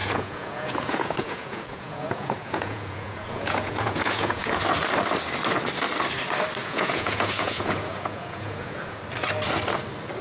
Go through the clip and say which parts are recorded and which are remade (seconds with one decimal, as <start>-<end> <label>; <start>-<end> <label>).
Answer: 0.0-4.6 remade; 4.6-6.6 recorded; 6.6-9.0 remade; 9.0-10.2 recorded